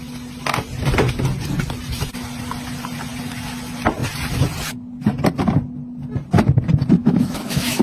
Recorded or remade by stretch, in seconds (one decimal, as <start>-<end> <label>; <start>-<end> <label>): 0.0-7.0 recorded; 7.0-7.8 remade